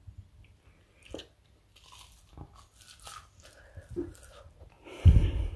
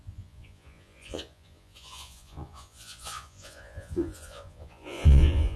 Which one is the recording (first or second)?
first